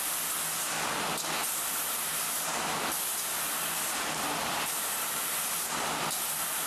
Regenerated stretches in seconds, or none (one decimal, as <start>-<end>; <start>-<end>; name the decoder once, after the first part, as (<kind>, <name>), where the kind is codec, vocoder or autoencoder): 1.4-5.2 (vocoder, BigVGAN v2)